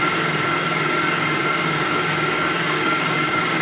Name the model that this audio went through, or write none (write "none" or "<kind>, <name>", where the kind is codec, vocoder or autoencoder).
codec, DAC